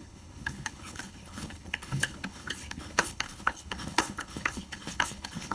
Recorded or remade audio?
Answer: remade